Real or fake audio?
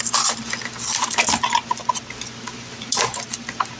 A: real